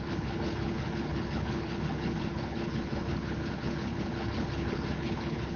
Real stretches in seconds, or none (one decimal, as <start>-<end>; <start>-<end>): none